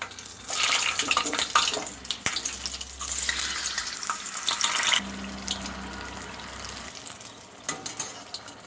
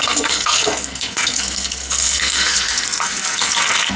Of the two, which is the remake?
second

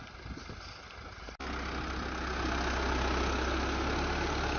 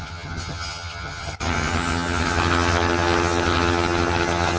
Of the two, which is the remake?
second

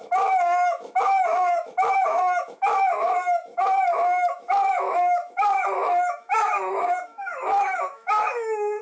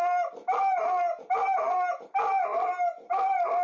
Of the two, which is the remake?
first